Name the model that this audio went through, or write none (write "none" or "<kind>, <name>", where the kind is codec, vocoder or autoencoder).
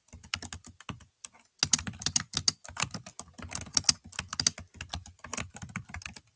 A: none